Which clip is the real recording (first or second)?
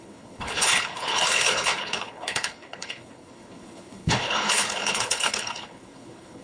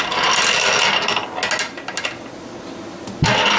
second